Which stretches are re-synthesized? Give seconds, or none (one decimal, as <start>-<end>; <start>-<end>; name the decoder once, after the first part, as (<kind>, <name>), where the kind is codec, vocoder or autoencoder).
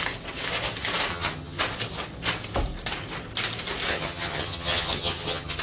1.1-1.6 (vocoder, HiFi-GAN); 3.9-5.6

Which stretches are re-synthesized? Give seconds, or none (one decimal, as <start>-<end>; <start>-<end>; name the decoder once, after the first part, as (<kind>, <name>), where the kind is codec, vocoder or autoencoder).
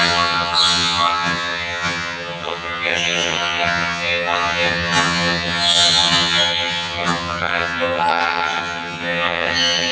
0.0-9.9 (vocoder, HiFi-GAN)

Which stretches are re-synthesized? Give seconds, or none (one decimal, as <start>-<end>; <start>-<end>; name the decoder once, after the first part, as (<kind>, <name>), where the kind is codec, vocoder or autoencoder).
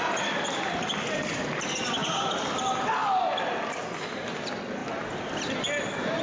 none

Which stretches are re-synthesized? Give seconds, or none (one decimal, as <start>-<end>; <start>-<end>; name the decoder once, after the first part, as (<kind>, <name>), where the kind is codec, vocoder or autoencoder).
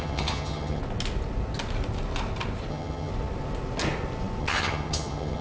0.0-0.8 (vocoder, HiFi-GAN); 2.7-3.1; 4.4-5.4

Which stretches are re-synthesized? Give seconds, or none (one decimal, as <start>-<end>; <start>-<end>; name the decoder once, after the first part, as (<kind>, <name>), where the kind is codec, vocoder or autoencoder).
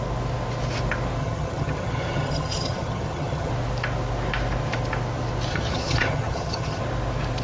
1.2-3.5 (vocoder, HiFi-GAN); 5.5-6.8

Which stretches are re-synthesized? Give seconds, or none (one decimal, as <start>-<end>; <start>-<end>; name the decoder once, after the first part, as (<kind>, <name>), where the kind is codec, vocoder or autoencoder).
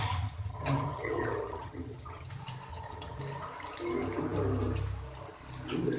0.5-2.3 (vocoder, HiFi-GAN); 2.7-3.2